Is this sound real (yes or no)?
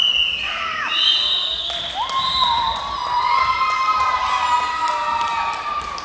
yes